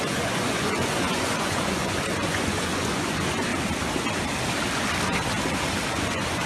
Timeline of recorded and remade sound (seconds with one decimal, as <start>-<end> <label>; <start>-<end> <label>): 0.0-3.5 remade; 3.5-5.9 recorded; 5.9-6.5 remade